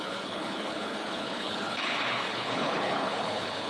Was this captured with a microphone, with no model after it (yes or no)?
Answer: no